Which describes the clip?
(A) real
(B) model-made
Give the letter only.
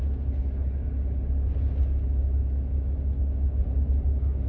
A